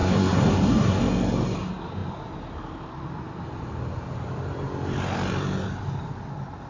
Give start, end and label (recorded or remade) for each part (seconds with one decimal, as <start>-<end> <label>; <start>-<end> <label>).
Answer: 0.0-1.0 remade; 1.0-6.7 recorded